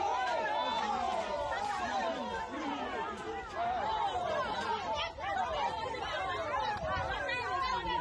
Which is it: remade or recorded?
recorded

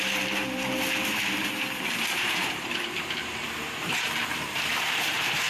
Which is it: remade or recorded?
remade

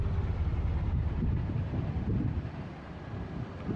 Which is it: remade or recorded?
recorded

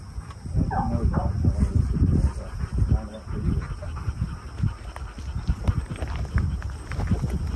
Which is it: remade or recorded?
recorded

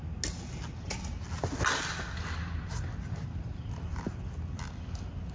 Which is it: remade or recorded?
recorded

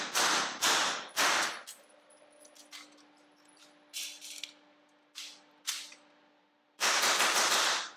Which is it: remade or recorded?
recorded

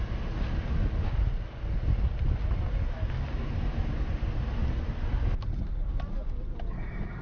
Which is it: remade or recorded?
recorded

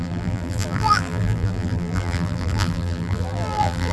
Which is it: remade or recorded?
remade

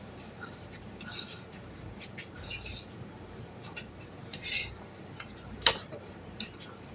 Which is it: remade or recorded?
remade